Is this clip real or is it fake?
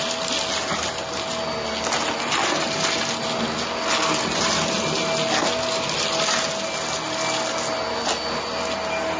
real